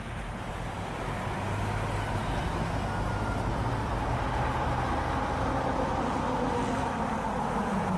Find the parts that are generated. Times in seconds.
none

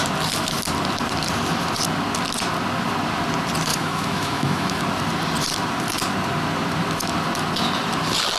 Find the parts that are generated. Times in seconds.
3.7-4.8 (autoencoder, DAC-VAE)

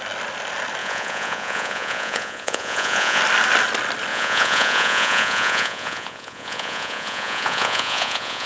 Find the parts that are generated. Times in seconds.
0.8-3.2 (vocoder, Vocos); 4.1-8.5

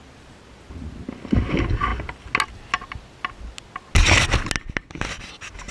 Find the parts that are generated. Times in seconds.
none

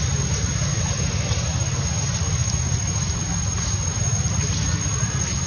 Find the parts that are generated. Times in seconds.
none

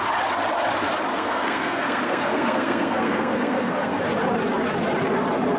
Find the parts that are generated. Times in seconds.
1.1-4.0 (codec, SNAC)

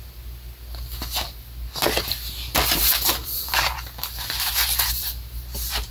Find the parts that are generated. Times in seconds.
3.2-4.5 (vocoder, BigVGAN v2)